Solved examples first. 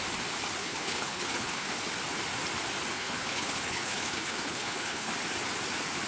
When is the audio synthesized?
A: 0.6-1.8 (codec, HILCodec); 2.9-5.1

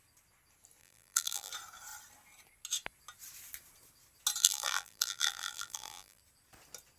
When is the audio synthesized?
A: 0.8-1.5 (vocoder, BigVGAN v2); 4.4-6.2

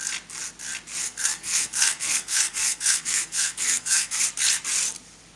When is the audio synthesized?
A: 1.0-4.2 (codec, SNAC)

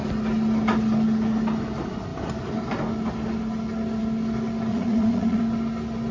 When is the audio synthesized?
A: 4.7-5.4 (vocoder, Vocos)

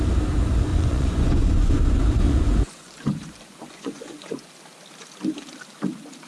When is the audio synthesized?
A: 0.7-4.5 (vocoder, Vocos)

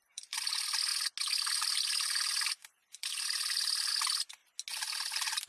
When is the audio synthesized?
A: 0.0-0.9 (vocoder, BigVGAN v2); 1.4-4.4; 4.9-5.5

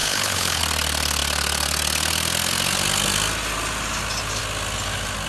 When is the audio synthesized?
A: 0.0-0.6 (codec, HILCodec)

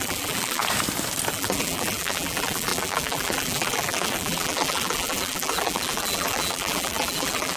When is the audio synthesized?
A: 0.0-0.6 (vocoder, BigVGAN v2); 1.3-7.6